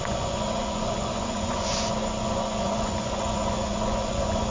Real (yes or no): no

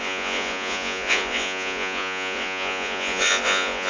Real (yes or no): no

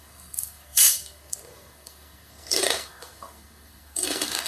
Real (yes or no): no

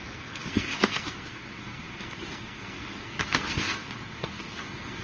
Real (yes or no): no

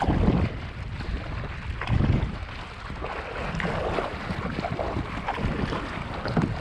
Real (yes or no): yes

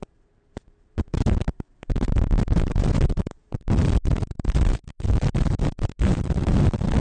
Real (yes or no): no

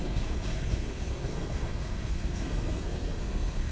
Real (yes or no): no